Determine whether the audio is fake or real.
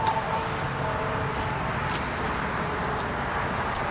real